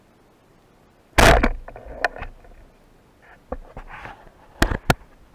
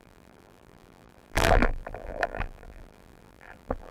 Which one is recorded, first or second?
first